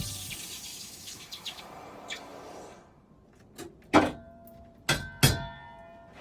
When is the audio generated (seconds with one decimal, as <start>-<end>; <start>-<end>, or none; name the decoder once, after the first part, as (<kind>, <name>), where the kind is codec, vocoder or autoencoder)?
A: 0.7-1.6 (autoencoder, DAC-VAE)